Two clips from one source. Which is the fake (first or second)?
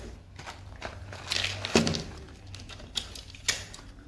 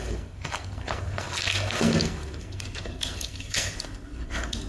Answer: second